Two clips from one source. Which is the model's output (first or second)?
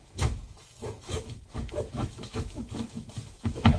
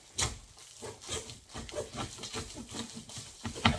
first